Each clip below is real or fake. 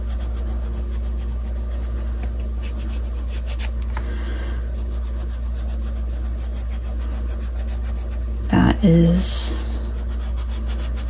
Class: real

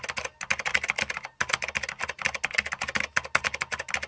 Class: real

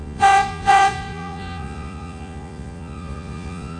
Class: fake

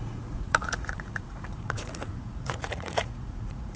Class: fake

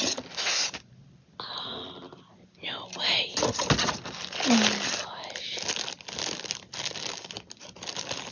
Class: real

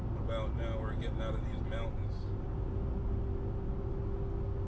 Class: real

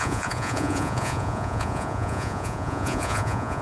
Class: fake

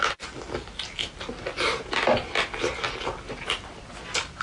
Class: real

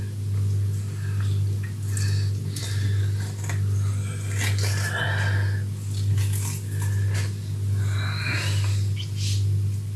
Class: real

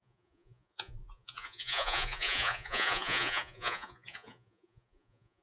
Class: fake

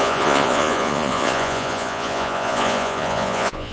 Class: fake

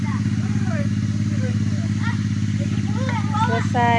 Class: real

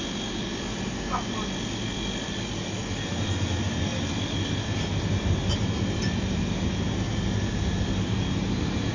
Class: real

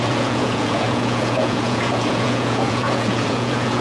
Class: fake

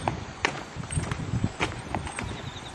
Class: fake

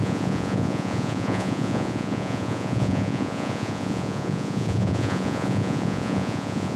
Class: fake